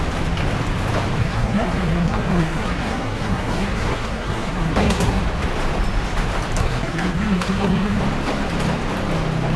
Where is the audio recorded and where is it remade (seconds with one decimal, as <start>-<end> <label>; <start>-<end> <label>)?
0.0-1.2 recorded; 1.2-5.2 remade; 5.2-6.6 recorded; 6.6-8.0 remade; 8.0-9.6 recorded